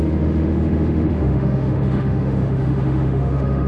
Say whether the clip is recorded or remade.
remade